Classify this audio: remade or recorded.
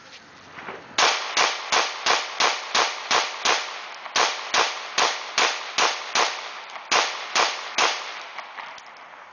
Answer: recorded